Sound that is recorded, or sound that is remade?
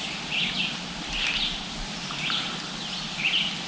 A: recorded